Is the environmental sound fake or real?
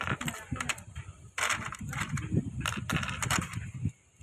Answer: real